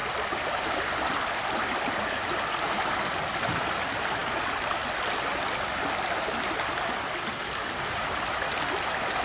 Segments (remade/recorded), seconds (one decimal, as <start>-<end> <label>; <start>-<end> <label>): 0.0-9.2 recorded